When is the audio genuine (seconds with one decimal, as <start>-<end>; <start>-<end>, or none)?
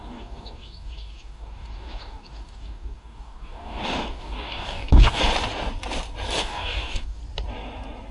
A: 5.2-6.4; 7.2-8.1